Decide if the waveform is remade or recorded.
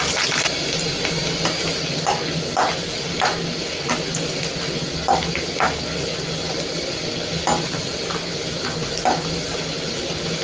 recorded